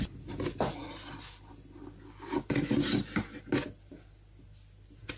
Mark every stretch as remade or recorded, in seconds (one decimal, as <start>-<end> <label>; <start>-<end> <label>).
0.0-5.2 recorded